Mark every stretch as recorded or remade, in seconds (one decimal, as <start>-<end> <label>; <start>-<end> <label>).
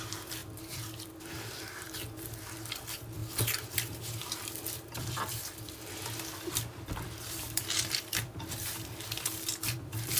0.0-10.2 remade